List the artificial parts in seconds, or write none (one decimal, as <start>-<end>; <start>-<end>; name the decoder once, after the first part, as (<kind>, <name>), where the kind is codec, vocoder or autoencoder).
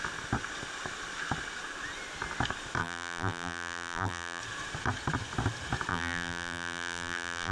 2.8-4.4 (vocoder, BigVGAN v2); 5.9-7.5